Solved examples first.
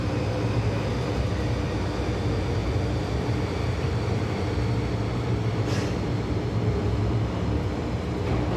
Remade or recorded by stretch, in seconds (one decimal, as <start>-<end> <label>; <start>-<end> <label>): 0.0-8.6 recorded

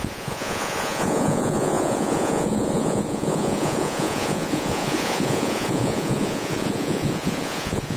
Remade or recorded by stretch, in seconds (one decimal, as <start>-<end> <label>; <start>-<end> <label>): 0.0-8.0 remade

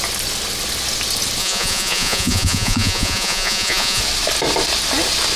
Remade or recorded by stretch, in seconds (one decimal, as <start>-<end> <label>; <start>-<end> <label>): 0.0-1.4 recorded; 1.4-4.0 remade; 4.0-5.4 recorded

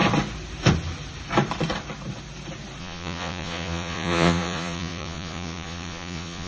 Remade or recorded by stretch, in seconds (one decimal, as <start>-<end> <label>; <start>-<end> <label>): 0.0-2.8 recorded; 2.8-6.5 remade